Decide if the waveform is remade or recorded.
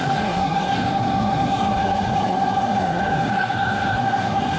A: remade